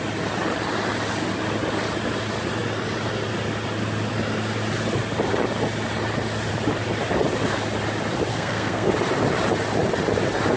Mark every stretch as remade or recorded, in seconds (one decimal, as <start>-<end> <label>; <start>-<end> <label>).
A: 0.0-8.3 recorded; 8.3-8.9 remade; 8.9-10.6 recorded